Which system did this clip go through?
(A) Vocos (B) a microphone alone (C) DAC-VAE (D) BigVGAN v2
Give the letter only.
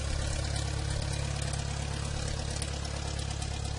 B